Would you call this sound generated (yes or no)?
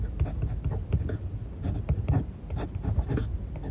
no